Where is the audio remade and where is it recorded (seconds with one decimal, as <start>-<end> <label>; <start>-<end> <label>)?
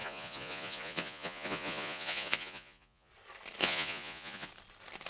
0.0-3.1 remade; 3.1-3.6 recorded; 3.6-4.5 remade; 4.5-5.1 recorded